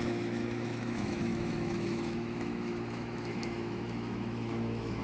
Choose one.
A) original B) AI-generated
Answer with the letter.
B